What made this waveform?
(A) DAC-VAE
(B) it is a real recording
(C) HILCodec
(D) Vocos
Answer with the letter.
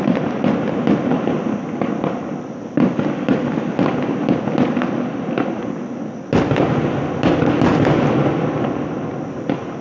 B